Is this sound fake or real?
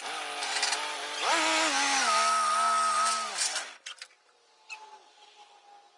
real